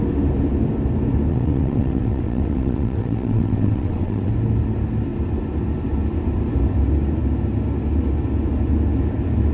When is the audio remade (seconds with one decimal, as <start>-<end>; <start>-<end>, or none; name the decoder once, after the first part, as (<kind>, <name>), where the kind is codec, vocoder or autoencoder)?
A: 1.3-4.3 (vocoder, WaveNeXt)